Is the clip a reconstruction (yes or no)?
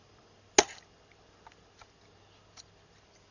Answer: no